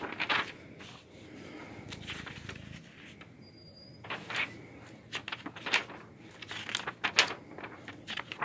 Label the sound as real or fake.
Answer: real